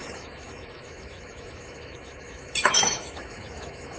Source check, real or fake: fake